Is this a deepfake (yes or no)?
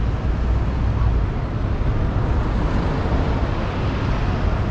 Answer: no